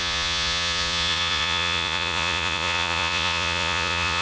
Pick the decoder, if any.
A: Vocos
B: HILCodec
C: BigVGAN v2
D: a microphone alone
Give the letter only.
A